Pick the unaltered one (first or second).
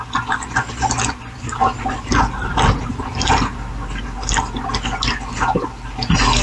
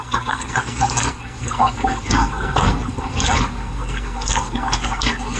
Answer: first